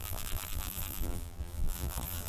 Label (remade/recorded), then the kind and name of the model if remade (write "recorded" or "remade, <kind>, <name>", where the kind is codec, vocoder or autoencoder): remade, vocoder, BigVGAN v2